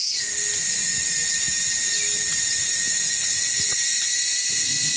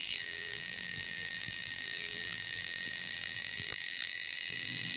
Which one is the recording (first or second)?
first